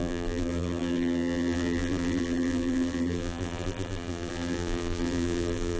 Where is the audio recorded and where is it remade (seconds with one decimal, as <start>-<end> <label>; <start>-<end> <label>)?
0.0-5.8 remade